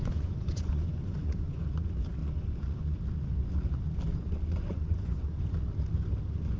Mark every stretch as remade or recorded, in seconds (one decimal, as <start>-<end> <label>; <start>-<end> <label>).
0.0-1.6 remade; 1.6-2.2 recorded; 2.2-3.0 remade; 3.0-4.1 recorded; 4.1-5.4 remade; 5.4-6.6 recorded